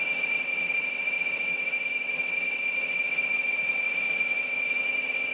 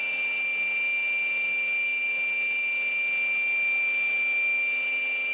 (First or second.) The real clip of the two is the second